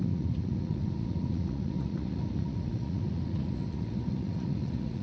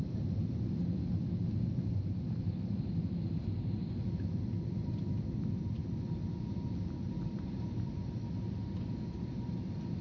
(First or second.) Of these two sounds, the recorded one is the second